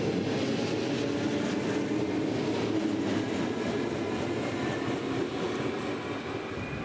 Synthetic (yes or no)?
no